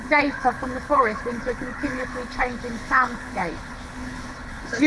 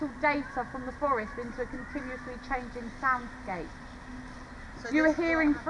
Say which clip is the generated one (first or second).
first